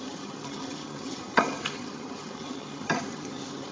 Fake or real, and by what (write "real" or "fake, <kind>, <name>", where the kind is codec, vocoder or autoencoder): fake, vocoder, HiFi-GAN